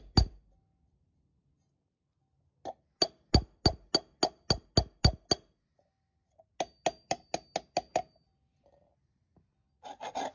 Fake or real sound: real